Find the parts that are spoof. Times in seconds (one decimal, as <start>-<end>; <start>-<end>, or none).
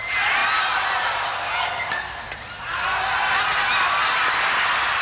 1.6-2.2